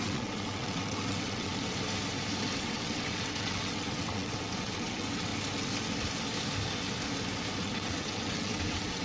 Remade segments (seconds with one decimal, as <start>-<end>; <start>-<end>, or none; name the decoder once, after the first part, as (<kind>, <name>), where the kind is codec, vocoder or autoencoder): 0.0-1.5 (vocoder, WaveNeXt); 2.6-5.3; 7.6-9.0